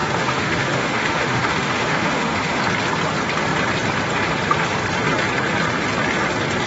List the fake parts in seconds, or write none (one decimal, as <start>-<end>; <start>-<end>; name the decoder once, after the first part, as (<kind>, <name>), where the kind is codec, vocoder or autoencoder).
0.0-2.6 (autoencoder, DAC-VAE)